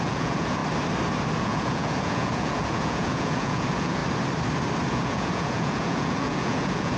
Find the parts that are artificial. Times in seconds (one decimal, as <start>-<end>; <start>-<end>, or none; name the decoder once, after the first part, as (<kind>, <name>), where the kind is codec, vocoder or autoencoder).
0.0-0.6 (vocoder, Vocos); 1.4-4.0; 4.9-7.0